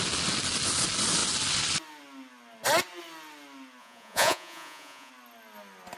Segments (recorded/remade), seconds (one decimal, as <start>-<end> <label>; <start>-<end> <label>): 0.0-3.8 recorded; 3.8-5.1 remade; 5.1-6.0 recorded

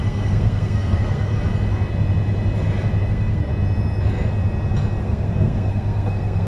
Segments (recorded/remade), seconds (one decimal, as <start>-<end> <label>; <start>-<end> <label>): 0.0-1.3 remade; 1.3-3.1 recorded; 3.1-3.5 remade; 3.5-5.0 recorded; 5.0-6.5 remade

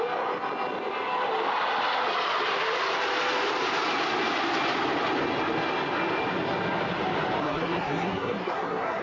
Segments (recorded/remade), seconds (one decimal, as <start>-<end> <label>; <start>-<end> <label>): 0.0-7.4 recorded; 7.4-9.0 remade

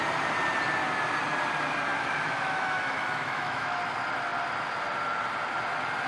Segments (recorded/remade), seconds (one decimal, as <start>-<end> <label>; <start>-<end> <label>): 0.0-1.9 recorded; 1.9-3.8 remade; 3.8-6.1 recorded

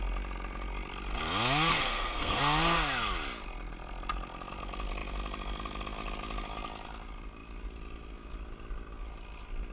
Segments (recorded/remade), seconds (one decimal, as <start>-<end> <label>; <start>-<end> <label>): 0.0-1.7 recorded; 1.7-2.4 remade; 2.4-9.7 recorded

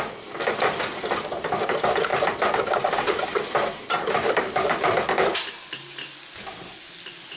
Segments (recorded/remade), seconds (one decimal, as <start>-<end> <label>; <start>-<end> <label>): 0.0-7.4 recorded